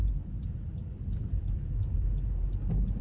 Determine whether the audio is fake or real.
real